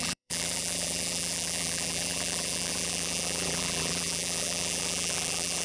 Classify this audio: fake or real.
fake